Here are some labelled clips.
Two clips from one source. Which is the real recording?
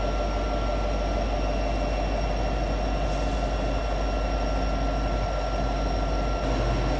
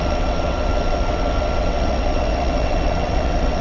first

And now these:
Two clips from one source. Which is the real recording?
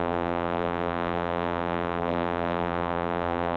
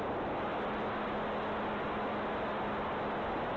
second